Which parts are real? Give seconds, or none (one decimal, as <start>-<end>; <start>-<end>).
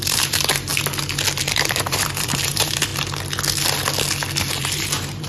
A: 0.7-1.4; 2.9-4.5